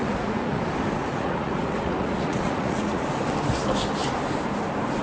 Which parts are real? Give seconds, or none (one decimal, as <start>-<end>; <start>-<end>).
0.6-1.0; 3.0-5.0